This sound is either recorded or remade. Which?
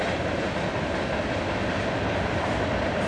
recorded